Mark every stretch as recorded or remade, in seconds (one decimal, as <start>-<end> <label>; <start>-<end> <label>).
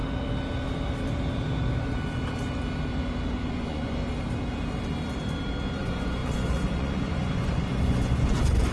0.0-3.5 recorded; 3.5-4.0 remade; 4.0-5.8 recorded; 5.8-8.7 remade